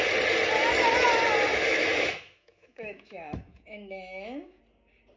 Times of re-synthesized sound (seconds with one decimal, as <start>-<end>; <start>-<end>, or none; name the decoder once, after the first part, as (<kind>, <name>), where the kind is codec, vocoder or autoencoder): 1.5-4.6 (autoencoder, DAC-VAE)